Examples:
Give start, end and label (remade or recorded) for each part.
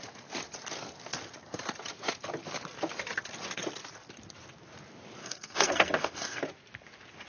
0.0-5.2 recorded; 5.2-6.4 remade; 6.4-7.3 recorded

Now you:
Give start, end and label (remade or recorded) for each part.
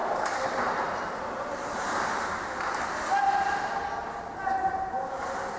0.0-5.6 recorded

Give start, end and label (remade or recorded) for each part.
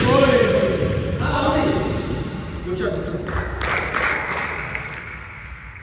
0.0-4.1 recorded; 4.1-5.8 remade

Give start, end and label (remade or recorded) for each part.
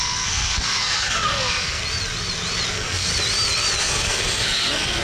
0.0-1.8 remade; 1.8-2.7 recorded; 2.7-3.1 remade; 3.1-3.8 recorded; 3.8-5.0 remade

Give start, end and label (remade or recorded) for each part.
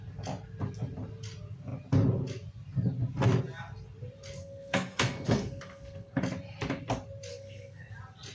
0.0-4.4 recorded; 4.4-6.2 remade; 6.2-7.3 recorded; 7.3-7.9 remade; 7.9-8.3 recorded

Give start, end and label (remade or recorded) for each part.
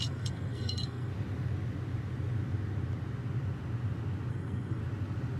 0.0-1.1 remade; 1.1-4.3 recorded; 4.3-4.8 remade; 4.8-5.4 recorded